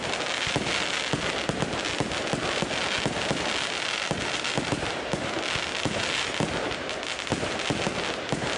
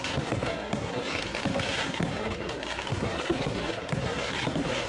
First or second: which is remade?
second